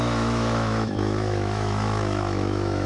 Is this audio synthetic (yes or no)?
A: yes